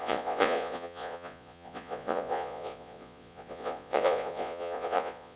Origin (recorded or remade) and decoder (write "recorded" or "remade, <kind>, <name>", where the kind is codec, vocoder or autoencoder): remade, vocoder, Vocos